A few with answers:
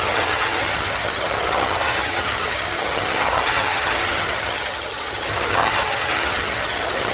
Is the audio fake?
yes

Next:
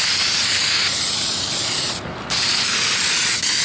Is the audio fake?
no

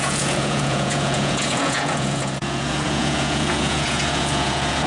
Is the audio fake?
yes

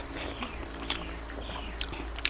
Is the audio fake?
no